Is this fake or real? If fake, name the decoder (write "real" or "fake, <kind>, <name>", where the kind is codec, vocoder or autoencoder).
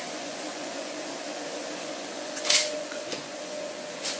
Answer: fake, vocoder, Vocos